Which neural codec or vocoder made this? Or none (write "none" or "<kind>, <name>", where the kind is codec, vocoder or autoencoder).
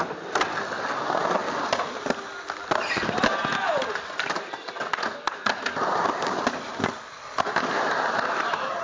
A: none